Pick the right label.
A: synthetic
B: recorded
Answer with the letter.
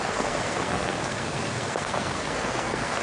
A